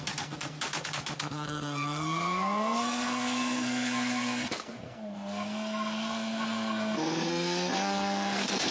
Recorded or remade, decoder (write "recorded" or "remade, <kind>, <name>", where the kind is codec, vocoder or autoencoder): remade, codec, SNAC